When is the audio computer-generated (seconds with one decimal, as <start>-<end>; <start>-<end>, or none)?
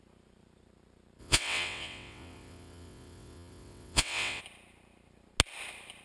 1.2-4.4